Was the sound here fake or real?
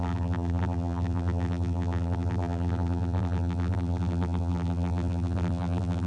fake